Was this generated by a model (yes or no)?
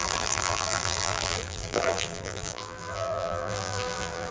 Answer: yes